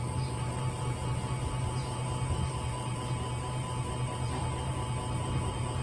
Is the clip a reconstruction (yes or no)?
yes